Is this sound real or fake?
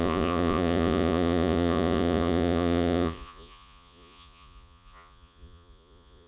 fake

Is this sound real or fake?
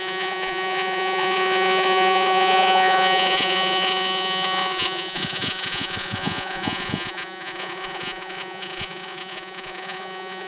fake